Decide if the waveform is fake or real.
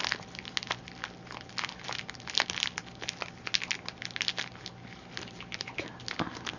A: real